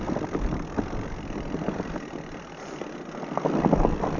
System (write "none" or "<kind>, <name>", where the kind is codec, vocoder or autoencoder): none